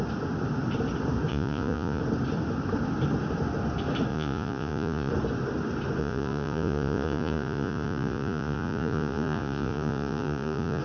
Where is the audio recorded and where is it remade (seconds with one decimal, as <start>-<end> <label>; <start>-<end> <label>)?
0.0-1.3 recorded; 1.3-2.0 remade; 2.0-4.1 recorded; 4.1-5.1 remade; 5.1-6.0 recorded; 6.0-10.8 remade